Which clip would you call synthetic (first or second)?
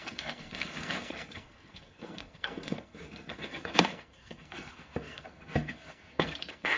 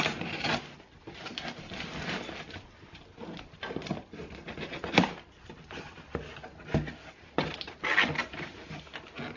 first